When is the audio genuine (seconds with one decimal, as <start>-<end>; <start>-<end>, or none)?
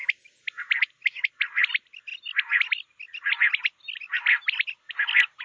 0.0-5.4